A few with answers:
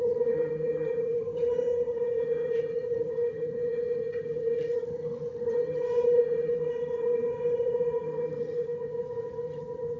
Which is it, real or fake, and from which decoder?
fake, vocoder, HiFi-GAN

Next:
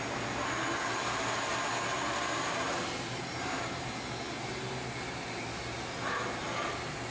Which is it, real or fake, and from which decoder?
real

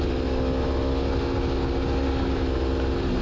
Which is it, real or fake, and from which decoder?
real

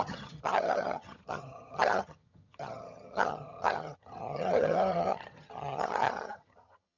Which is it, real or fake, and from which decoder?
fake, vocoder, HiFi-GAN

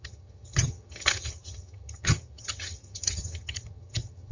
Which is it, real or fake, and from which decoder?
fake, vocoder, HiFi-GAN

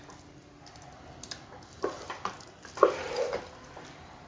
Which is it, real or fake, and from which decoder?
real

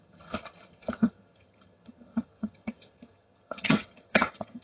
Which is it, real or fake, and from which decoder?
fake, vocoder, HiFi-GAN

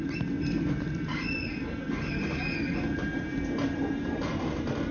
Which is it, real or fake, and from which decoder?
real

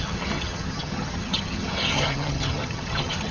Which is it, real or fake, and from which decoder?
fake, vocoder, HiFi-GAN